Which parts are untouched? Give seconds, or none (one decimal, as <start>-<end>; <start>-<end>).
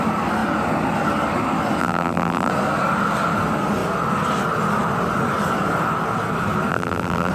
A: 0.0-1.8; 2.5-6.7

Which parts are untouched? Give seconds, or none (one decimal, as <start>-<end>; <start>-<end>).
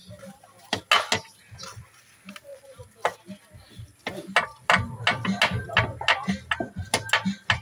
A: 0.0-7.6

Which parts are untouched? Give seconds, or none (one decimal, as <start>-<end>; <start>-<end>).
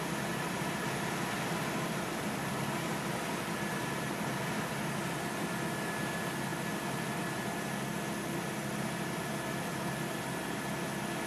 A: 0.0-11.3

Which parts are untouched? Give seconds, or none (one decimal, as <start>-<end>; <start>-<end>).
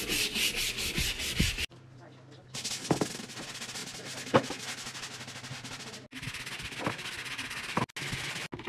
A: 0.0-8.7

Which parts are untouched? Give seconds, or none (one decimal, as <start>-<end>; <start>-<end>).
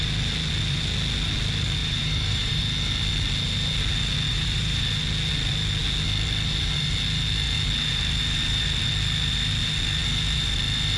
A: 0.0-1.8; 2.6-4.3; 4.9-11.0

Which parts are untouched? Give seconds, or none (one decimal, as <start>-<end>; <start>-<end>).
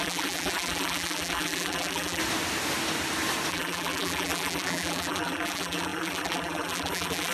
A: 2.2-3.5